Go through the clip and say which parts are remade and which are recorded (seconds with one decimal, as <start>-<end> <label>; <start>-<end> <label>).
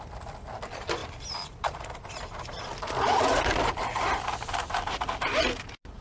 0.0-1.0 recorded; 1.0-2.1 remade; 2.1-3.3 recorded; 3.3-4.2 remade; 4.2-6.0 recorded